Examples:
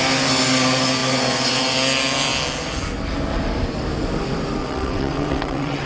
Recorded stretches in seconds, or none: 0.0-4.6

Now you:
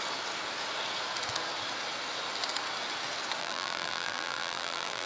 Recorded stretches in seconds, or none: 0.0-3.4

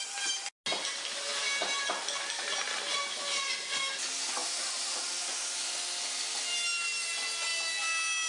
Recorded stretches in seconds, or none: 0.0-8.3

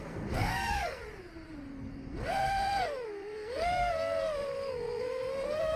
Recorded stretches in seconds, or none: 1.0-1.9